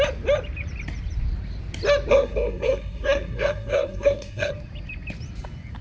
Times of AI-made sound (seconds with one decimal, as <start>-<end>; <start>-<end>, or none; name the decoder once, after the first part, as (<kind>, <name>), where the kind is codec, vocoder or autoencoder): 2.1-4.5 (codec, SNAC)

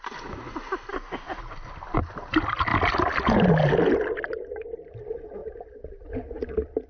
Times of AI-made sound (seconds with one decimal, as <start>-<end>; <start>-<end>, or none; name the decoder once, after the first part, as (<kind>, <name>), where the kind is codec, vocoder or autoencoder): 0.9-1.4 (codec, DAC)

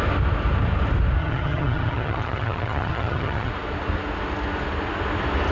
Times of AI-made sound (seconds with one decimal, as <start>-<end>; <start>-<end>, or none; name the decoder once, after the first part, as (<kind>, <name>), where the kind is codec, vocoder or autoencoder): 1.2-3.5 (vocoder, HiFi-GAN)